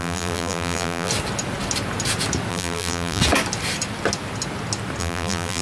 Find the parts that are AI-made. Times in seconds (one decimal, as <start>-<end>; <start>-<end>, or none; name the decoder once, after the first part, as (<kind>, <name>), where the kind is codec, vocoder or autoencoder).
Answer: 0.0-1.1 (vocoder, BigVGAN v2); 2.5-3.2; 5.0-5.6